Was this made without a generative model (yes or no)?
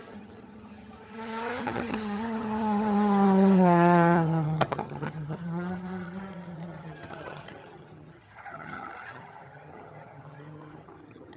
no